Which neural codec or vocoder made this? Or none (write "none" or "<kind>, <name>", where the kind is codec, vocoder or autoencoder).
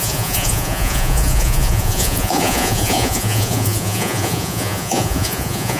vocoder, Vocos